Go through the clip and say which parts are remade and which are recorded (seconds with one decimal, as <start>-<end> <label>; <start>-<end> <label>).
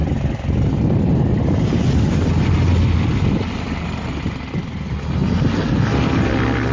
0.0-6.7 recorded